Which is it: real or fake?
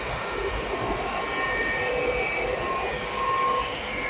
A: real